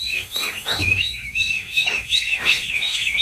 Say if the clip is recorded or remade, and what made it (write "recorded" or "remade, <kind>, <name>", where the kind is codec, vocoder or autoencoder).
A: remade, autoencoder, DAC-VAE